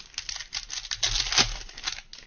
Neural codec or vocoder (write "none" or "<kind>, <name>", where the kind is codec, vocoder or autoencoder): none